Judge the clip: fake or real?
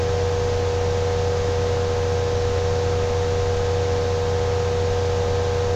real